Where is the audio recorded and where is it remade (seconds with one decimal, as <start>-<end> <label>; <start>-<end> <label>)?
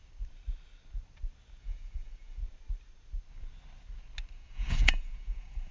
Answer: 0.0-1.6 recorded; 1.6-2.4 remade; 2.4-4.3 recorded; 4.3-5.7 remade